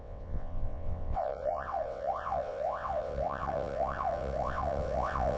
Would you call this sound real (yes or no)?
no